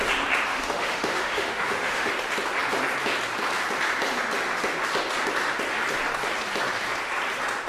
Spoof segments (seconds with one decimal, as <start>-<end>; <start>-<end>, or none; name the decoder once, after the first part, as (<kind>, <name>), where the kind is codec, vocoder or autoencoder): 0.5-2.1 (autoencoder, DAC-VAE)